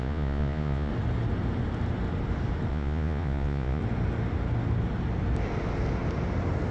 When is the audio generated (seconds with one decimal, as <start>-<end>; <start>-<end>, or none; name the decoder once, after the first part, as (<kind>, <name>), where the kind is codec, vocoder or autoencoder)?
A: 0.0-0.9 (vocoder, Vocos); 2.7-3.8